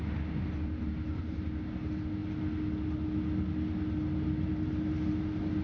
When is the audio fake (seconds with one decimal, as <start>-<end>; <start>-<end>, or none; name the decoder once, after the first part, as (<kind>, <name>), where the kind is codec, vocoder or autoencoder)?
none